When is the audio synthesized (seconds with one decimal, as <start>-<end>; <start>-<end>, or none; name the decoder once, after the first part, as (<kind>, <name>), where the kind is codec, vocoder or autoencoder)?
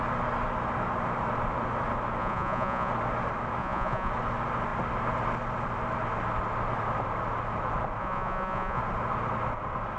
2.2-2.9 (vocoder, Vocos); 3.6-4.1; 8.0-8.8